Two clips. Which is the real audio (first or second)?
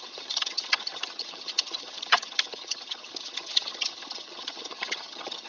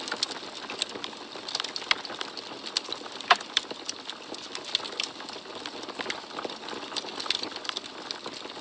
second